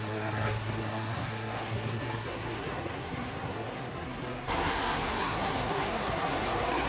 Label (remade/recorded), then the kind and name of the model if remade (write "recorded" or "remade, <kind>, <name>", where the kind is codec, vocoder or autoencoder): remade, codec, SNAC